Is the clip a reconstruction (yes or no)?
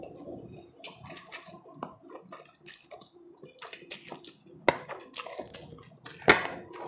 no